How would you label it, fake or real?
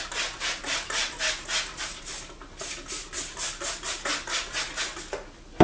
real